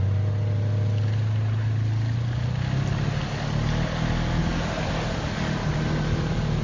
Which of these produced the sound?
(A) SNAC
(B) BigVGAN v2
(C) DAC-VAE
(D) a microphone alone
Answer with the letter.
D